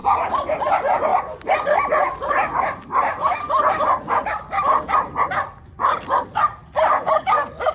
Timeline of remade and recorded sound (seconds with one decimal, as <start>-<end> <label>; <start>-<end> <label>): 0.0-7.7 recorded